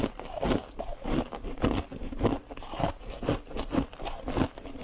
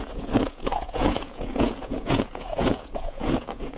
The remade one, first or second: second